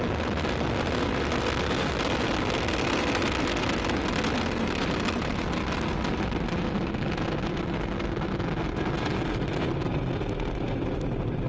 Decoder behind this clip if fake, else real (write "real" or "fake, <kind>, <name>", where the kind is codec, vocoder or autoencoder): real